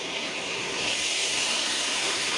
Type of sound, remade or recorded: remade